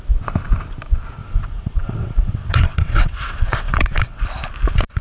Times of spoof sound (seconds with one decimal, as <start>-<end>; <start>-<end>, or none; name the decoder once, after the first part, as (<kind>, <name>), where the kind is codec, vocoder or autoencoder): 1.2-4.2 (vocoder, WaveNeXt)